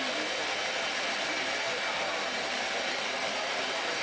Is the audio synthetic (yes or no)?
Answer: no